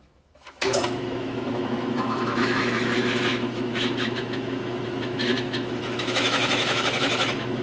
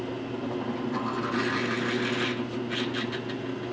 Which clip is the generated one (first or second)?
first